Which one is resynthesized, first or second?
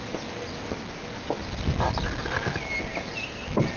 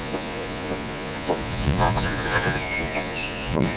second